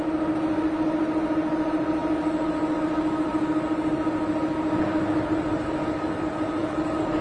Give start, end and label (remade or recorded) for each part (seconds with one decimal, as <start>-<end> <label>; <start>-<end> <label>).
0.0-6.6 recorded; 6.6-7.2 remade